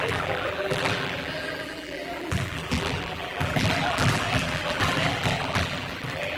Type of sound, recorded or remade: remade